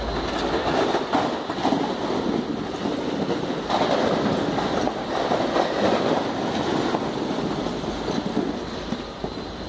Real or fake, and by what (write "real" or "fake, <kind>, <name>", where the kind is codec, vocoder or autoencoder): real